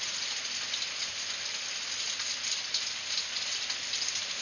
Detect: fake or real real